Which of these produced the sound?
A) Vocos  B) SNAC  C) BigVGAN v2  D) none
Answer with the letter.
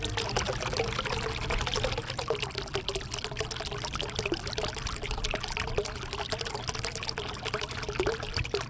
D